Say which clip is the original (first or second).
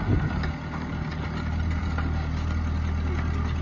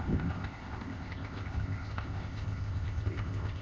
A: first